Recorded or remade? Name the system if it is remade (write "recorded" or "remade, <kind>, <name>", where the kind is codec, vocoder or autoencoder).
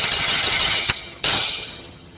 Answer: remade, vocoder, HiFi-GAN